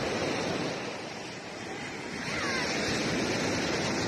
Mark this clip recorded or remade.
recorded